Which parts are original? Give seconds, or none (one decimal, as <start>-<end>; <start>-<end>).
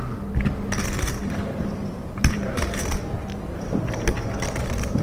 0.0-1.2; 4.1-5.0